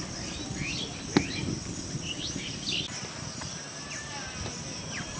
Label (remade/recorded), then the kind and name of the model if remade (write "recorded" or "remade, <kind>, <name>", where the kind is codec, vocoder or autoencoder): recorded